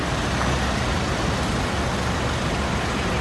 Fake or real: real